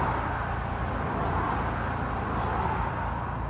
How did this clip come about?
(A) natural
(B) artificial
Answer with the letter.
A